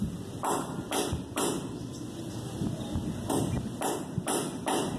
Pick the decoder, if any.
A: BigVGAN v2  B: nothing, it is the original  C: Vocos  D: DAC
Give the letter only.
B